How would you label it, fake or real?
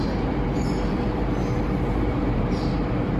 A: fake